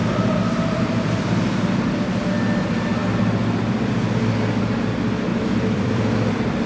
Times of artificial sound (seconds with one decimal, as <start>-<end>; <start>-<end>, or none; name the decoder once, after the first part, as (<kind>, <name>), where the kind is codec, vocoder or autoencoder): 5.3-6.7 (vocoder, BigVGAN v2)